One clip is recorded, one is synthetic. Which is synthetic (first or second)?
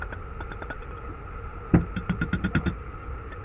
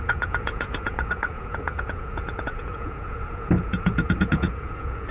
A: second